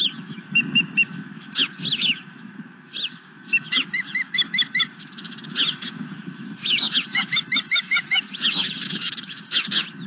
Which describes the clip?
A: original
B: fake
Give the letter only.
B